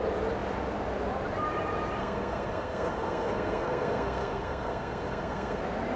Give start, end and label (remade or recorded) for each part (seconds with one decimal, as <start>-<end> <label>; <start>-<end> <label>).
0.0-2.0 recorded; 2.0-5.6 remade; 5.6-6.0 recorded